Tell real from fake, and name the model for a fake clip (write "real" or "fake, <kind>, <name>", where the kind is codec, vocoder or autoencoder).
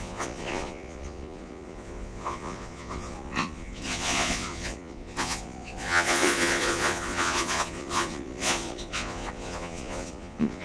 fake, vocoder, Vocos